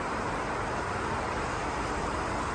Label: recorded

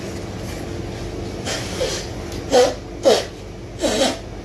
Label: recorded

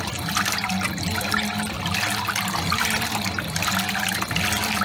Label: recorded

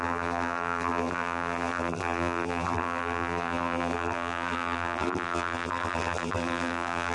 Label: remade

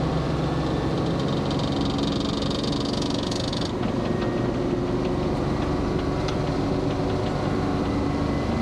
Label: recorded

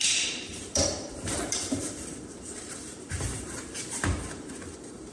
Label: remade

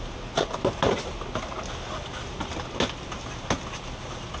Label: recorded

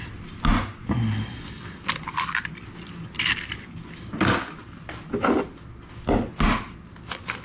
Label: recorded